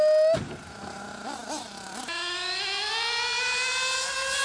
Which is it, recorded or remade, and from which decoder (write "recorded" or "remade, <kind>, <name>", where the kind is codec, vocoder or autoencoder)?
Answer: recorded